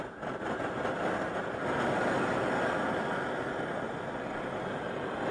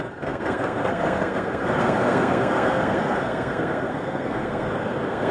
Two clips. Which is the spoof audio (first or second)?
second